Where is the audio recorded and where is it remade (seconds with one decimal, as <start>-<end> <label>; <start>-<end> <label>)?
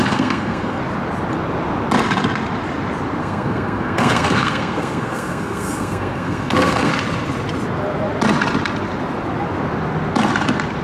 0.0-0.8 remade; 0.8-3.2 recorded; 3.2-6.9 remade; 6.9-10.8 recorded